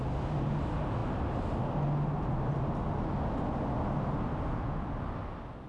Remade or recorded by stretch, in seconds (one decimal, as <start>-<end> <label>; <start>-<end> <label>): 0.0-5.7 recorded